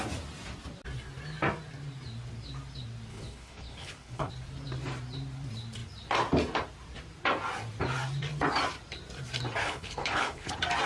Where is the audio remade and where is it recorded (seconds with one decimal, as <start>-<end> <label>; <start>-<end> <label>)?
0.0-3.1 recorded; 3.1-4.3 remade; 4.3-9.6 recorded; 9.6-10.5 remade; 10.5-10.9 recorded